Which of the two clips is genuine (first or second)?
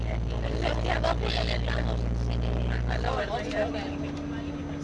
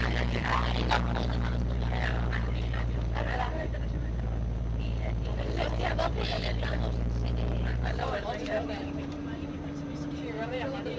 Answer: first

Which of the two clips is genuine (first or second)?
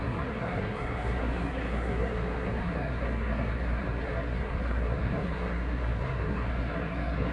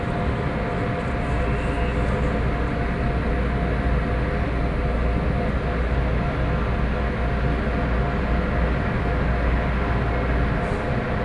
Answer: second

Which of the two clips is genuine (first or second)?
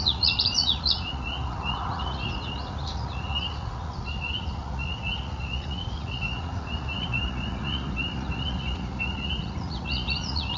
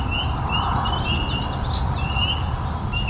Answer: second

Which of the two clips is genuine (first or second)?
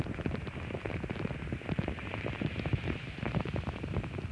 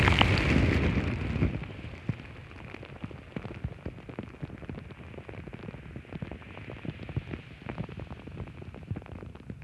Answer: second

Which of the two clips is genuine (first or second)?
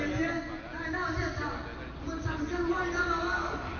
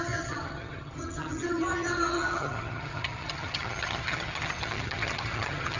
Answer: first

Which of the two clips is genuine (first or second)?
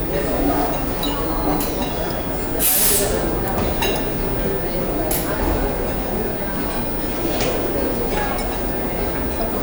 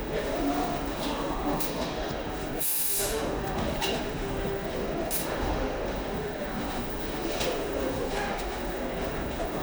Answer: first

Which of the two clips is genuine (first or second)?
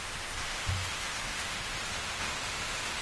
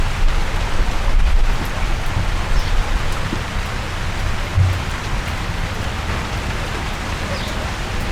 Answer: second